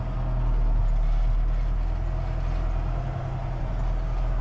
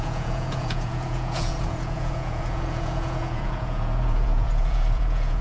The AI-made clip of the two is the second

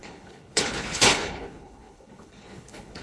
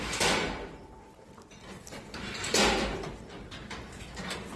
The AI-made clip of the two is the first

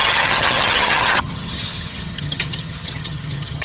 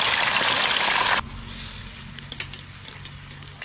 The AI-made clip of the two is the first